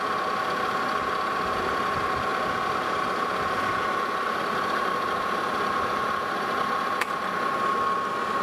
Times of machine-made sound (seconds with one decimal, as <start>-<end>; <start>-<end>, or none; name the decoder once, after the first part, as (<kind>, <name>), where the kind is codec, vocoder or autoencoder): none